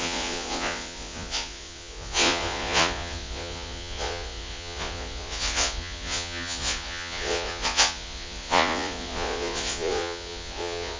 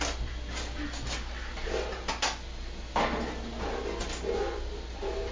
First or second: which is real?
second